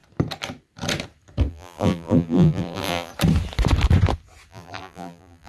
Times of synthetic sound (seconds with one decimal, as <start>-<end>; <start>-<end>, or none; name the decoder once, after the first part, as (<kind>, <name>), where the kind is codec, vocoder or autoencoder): 1.5-3.1 (vocoder, BigVGAN v2); 4.5-5.5

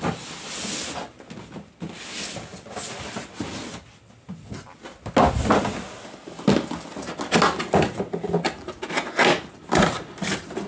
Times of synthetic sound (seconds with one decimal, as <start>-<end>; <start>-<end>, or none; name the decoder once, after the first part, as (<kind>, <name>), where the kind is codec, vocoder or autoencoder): none